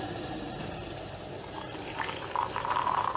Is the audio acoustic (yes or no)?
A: no